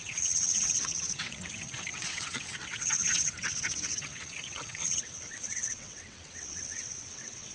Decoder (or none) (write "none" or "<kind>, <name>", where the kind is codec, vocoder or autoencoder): vocoder, WaveNeXt